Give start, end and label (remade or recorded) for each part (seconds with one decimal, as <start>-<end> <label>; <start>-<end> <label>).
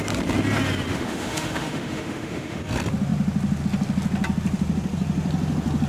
0.0-0.9 recorded; 0.9-2.6 remade; 2.6-5.9 recorded